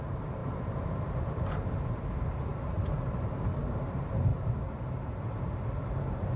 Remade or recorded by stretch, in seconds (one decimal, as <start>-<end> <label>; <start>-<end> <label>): 0.0-4.3 remade; 4.3-5.2 recorded; 5.2-6.4 remade

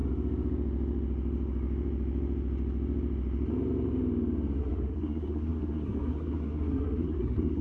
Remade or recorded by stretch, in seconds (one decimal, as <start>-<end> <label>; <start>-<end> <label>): 0.0-4.6 recorded; 4.6-7.6 remade